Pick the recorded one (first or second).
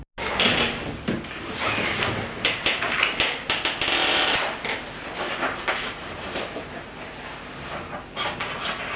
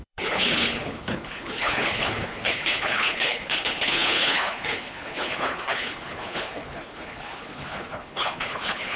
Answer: first